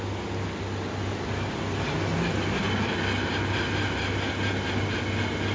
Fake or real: real